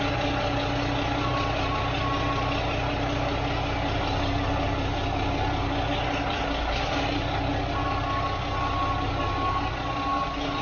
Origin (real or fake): real